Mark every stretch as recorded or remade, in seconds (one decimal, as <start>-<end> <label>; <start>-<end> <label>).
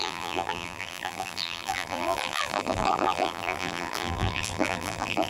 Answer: 0.0-5.3 remade